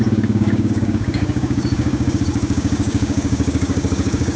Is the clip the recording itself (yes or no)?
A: no